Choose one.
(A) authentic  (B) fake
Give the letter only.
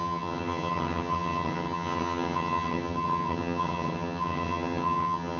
B